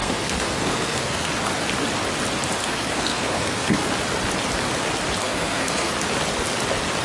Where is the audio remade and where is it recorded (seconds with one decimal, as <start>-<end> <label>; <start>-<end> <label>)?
0.0-1.3 remade; 1.3-2.6 recorded; 2.6-3.9 remade; 3.9-5.2 recorded; 5.2-5.9 remade; 5.9-7.0 recorded